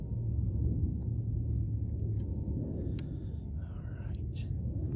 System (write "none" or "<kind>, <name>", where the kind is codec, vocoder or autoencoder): none